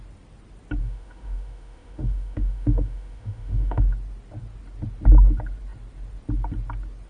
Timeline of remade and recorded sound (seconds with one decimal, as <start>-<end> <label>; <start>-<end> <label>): 0.0-0.8 recorded; 0.8-3.8 remade; 3.8-7.1 recorded